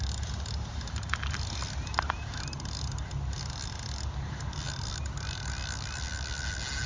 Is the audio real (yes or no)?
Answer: yes